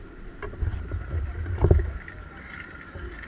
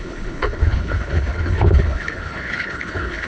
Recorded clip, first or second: first